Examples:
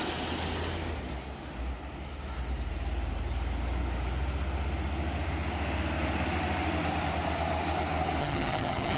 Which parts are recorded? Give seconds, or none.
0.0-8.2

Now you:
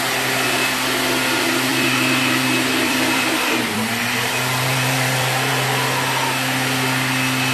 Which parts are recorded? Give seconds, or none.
0.0-1.7; 5.5-7.5

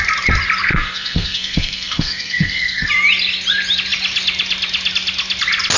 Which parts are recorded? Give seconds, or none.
0.0-0.7; 2.9-5.8

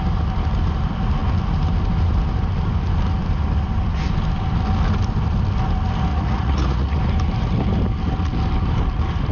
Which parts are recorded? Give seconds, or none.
0.0-6.1; 7.0-9.3

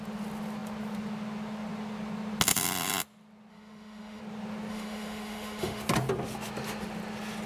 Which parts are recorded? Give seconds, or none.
0.0-3.5; 4.2-4.7; 5.8-7.5

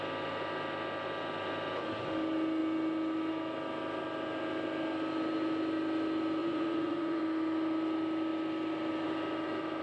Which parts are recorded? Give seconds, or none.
0.0-6.4; 7.2-9.8

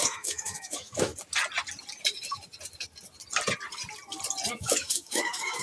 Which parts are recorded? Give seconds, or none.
1.1-4.5

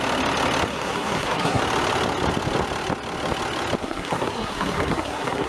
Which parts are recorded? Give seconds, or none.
0.0-0.7; 1.6-3.8